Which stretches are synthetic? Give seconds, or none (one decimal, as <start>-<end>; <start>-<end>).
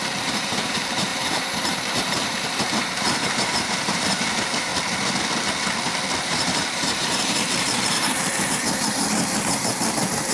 0.0-4.7; 6.2-10.3